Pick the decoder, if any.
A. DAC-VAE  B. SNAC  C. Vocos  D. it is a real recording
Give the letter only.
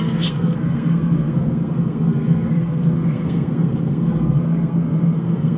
B